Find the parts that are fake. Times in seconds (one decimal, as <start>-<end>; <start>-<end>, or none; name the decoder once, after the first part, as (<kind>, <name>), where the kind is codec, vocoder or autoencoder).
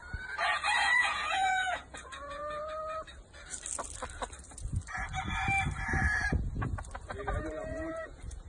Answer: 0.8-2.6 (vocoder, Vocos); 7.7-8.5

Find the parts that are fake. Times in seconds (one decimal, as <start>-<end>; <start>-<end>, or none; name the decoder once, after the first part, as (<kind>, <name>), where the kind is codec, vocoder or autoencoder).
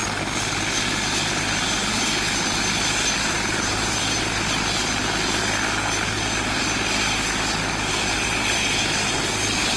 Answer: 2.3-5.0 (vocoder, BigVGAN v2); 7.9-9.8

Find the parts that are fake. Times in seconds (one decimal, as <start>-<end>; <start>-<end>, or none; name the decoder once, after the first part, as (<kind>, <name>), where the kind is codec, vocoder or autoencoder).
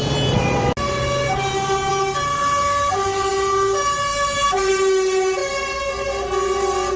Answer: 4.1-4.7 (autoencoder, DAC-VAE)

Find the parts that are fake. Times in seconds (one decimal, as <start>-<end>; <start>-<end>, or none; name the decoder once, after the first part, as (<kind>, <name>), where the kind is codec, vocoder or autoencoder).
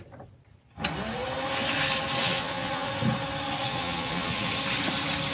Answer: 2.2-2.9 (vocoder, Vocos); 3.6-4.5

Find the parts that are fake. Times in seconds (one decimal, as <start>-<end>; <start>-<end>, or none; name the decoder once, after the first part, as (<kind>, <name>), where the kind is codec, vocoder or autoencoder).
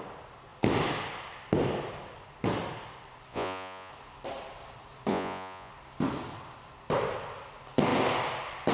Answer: 3.3-3.9 (vocoder, Vocos); 5.1-5.7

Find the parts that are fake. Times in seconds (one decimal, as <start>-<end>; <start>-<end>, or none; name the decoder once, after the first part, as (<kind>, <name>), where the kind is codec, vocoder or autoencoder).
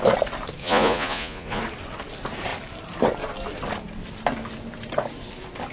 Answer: 0.6-1.6 (vocoder, Vocos)